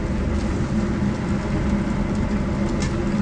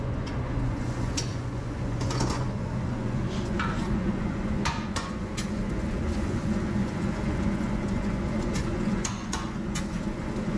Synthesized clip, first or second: second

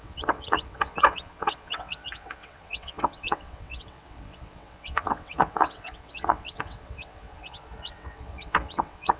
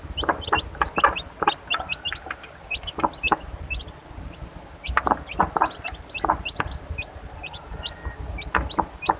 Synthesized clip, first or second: first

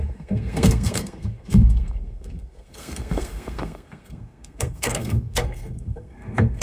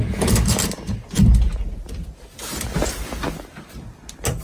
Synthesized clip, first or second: first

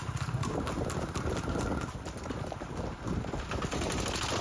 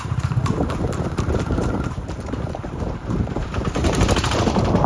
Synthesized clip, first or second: second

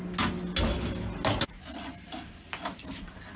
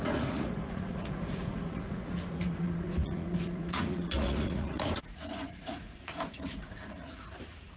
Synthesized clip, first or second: second